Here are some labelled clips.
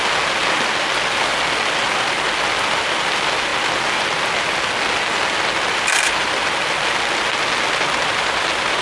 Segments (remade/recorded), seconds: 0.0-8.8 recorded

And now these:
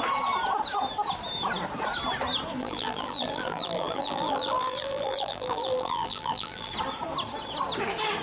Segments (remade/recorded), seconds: 0.0-2.6 recorded; 2.6-6.7 remade; 6.7-8.2 recorded

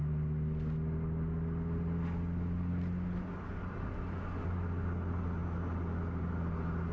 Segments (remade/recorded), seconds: 0.0-6.9 recorded

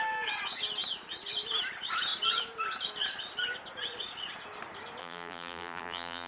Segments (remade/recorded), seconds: 0.0-5.0 recorded; 5.0-6.3 remade